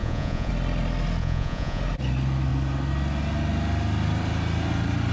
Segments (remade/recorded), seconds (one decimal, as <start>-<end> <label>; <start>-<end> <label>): 0.0-0.5 remade; 0.5-1.2 recorded; 1.2-1.8 remade; 1.8-5.1 recorded